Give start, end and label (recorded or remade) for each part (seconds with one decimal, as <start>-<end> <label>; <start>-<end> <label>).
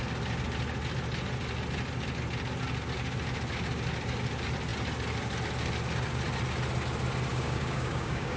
0.0-7.3 recorded; 7.3-8.4 remade